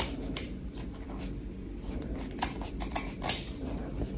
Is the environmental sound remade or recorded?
remade